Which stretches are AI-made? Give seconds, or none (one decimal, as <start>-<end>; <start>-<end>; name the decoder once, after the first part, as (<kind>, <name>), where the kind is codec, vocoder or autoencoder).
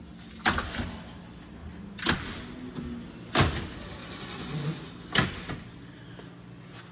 4.0-4.9 (vocoder, Vocos)